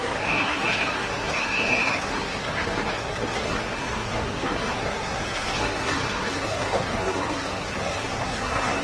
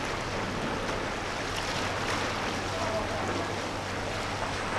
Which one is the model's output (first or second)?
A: first